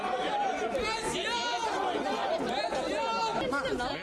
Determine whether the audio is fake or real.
real